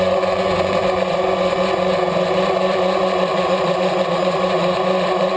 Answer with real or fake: fake